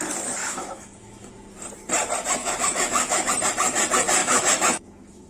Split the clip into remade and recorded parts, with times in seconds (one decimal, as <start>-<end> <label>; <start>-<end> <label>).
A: 0.0-0.4 recorded; 0.4-1.3 remade; 1.3-2.4 recorded; 2.4-3.3 remade; 3.3-4.2 recorded; 4.2-5.3 remade